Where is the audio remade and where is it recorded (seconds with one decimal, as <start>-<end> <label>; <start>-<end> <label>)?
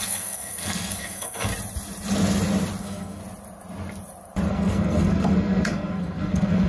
0.0-1.5 remade; 1.5-2.8 recorded; 2.8-3.2 remade; 3.2-4.5 recorded; 4.5-6.7 remade